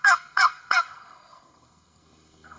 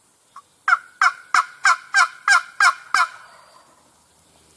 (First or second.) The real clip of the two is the second